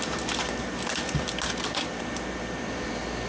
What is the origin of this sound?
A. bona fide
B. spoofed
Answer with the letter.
A